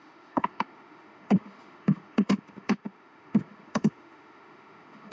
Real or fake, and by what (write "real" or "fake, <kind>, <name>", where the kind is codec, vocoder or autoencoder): fake, autoencoder, DAC-VAE